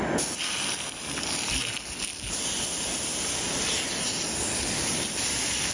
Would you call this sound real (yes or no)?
yes